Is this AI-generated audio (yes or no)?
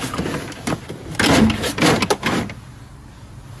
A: no